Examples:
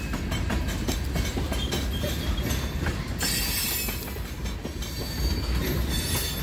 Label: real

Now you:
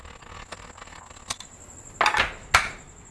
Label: real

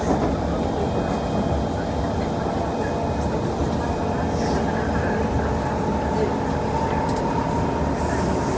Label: real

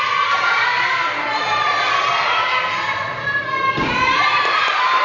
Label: fake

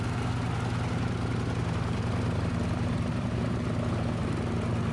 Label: real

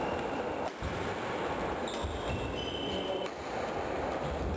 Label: real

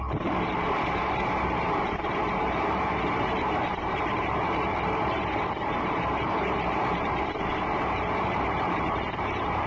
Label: fake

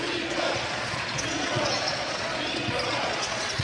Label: fake